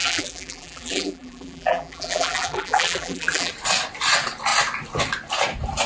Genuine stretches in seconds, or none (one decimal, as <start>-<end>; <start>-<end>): 3.5-5.9